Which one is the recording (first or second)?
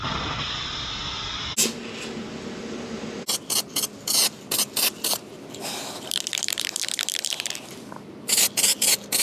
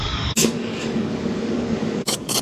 first